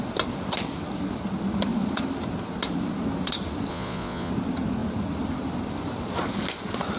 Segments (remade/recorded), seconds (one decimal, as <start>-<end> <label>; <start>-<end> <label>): 0.0-3.7 recorded; 3.7-4.3 remade; 4.3-7.0 recorded